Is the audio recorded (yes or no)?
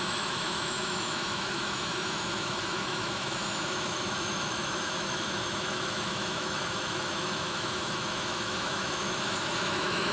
no